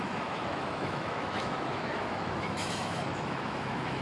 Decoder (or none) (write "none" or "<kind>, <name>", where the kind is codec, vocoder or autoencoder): autoencoder, DAC-VAE